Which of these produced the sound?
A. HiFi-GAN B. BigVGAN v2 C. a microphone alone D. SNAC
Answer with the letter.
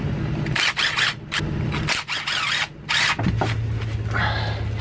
C